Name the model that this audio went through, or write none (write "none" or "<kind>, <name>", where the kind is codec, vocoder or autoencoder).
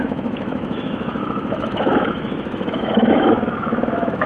autoencoder, DAC-VAE